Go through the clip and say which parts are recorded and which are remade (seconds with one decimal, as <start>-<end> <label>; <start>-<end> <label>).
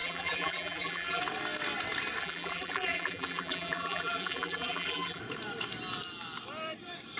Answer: 0.0-1.2 remade; 1.2-2.2 recorded; 2.2-5.2 remade; 5.2-7.2 recorded